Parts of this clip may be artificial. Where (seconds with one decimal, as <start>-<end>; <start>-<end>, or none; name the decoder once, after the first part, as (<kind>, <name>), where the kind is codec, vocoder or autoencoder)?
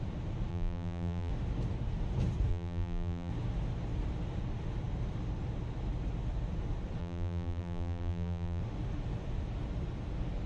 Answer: 0.5-1.3 (vocoder, BigVGAN v2); 2.5-3.3; 7.0-8.6